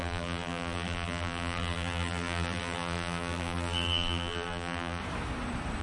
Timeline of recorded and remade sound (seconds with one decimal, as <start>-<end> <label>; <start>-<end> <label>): 0.0-5.0 remade; 5.0-5.8 recorded